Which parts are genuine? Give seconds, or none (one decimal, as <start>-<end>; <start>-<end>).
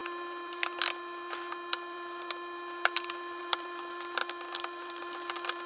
none